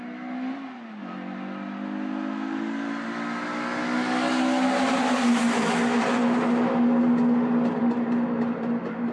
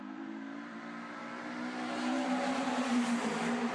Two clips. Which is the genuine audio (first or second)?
first